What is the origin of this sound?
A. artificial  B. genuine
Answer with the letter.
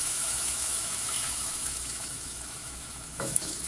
A